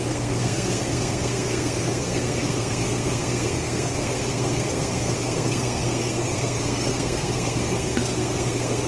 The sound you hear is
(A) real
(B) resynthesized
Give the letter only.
B